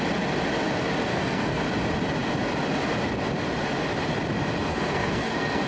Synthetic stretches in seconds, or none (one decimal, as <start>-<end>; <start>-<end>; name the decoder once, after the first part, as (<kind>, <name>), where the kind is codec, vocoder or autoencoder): 1.1-1.6 (codec, SNAC); 4.7-5.7